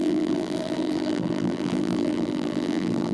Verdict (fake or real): fake